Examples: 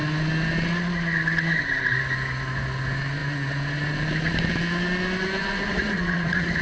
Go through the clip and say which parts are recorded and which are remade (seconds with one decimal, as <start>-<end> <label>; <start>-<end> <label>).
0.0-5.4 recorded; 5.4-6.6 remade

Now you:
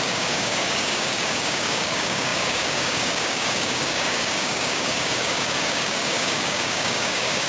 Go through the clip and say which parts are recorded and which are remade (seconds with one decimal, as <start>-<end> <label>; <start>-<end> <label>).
0.0-7.5 remade

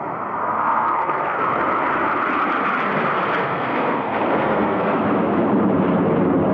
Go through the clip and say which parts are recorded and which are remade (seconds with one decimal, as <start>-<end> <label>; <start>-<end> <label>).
0.0-0.4 recorded; 0.4-1.5 remade; 1.5-3.4 recorded; 3.4-5.0 remade; 5.0-6.5 recorded

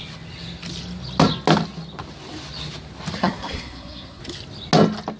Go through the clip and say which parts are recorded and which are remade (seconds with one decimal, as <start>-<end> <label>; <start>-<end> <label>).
0.0-3.2 recorded; 3.2-4.2 remade; 4.2-5.2 recorded